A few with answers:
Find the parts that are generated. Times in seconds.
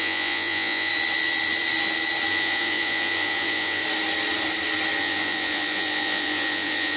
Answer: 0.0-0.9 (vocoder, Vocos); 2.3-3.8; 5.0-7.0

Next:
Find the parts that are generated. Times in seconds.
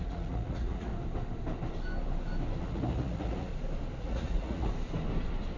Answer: 0.0-0.9 (vocoder, Vocos); 2.6-3.5; 4.0-4.7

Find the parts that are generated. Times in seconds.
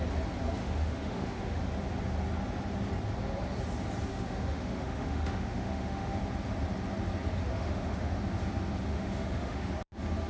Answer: 0.6-1.6 (autoencoder, DAC-VAE); 4.1-6.2; 7.5-8.2; 8.9-9.7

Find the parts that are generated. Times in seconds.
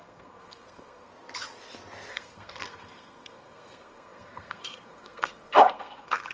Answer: 0.0-1.1 (codec, SNAC); 2.1-6.3